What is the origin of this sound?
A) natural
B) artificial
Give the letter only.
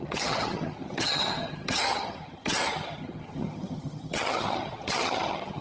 B